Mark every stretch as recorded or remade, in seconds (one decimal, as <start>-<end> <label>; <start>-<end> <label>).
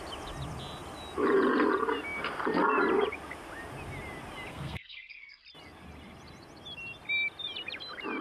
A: 0.0-4.5 recorded; 4.5-5.4 remade; 5.4-8.2 recorded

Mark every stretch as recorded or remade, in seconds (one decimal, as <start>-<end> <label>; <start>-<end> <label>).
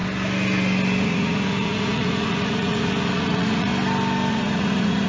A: 0.0-1.0 recorded; 1.0-3.7 remade; 3.7-4.3 recorded; 4.3-5.1 remade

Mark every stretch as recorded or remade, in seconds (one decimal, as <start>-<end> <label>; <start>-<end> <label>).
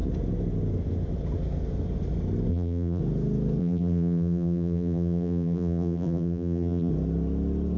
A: 0.0-2.5 recorded; 2.5-3.0 remade; 3.0-3.6 recorded; 3.6-6.9 remade; 6.9-7.8 recorded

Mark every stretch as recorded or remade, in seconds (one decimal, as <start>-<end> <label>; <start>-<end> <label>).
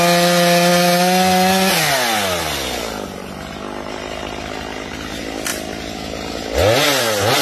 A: 0.0-7.4 recorded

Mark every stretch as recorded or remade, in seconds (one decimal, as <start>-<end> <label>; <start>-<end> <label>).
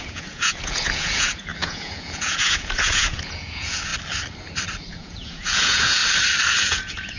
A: 0.0-3.9 remade; 3.9-4.9 recorded; 4.9-6.0 remade; 6.0-6.6 recorded; 6.6-7.2 remade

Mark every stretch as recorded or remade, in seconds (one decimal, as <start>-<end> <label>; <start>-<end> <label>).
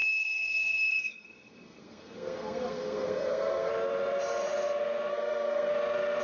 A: 0.0-3.7 remade; 3.7-5.1 recorded; 5.1-5.7 remade; 5.7-6.2 recorded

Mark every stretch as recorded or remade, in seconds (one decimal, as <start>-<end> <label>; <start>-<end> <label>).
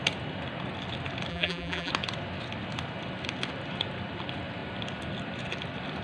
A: 0.0-1.3 recorded; 1.3-1.9 remade; 1.9-6.0 recorded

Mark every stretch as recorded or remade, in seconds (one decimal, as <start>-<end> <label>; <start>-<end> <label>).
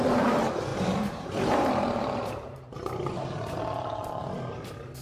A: 0.0-0.7 recorded; 0.7-3.6 remade; 3.6-5.0 recorded